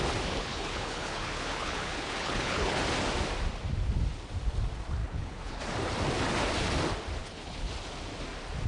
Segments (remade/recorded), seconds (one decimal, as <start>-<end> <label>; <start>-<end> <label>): 0.0-0.4 recorded; 0.4-2.8 remade; 2.8-5.0 recorded; 5.0-5.6 remade; 5.6-7.2 recorded; 7.2-7.7 remade; 7.7-8.7 recorded